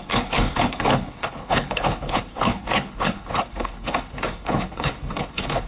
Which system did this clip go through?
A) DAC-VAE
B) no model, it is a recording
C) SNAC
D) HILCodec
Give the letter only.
D